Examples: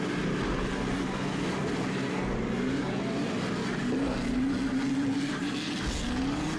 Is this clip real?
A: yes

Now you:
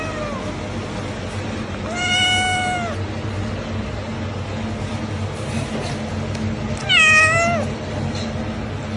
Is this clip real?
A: yes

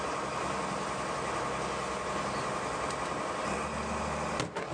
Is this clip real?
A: yes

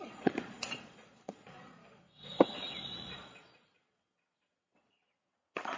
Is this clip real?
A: no